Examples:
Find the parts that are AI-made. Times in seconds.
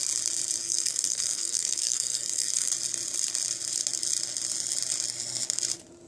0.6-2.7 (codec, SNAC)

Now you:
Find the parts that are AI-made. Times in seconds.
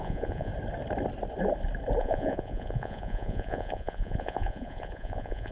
0.0-0.5 (vocoder, Vocos); 2.0-5.5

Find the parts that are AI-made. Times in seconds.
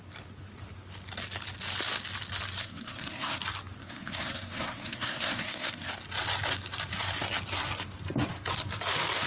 2.6-3.4 (codec, SNAC); 3.8-5.9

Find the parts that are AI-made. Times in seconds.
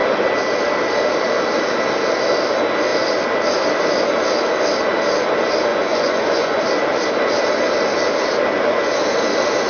5.7-6.6 (vocoder, Vocos)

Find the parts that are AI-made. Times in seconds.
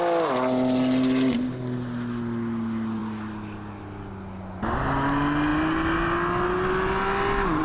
none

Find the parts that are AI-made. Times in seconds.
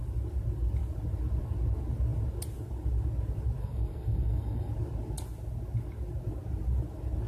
3.6-4.7 (codec, SNAC)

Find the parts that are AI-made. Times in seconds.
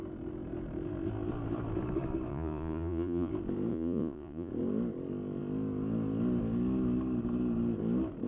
2.3-3.3 (vocoder, Vocos); 3.7-4.5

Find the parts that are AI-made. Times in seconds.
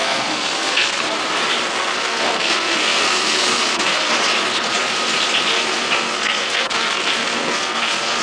0.0-1.0 (codec, SNAC); 1.7-4.1; 5.5-8.2